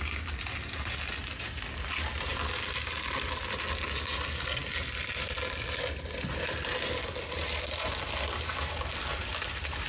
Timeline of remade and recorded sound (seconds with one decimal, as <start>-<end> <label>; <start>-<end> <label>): 0.0-9.9 recorded

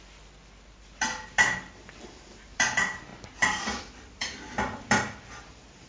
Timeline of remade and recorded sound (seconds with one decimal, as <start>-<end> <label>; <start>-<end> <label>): 0.0-3.1 remade; 3.1-3.8 recorded; 3.8-5.9 remade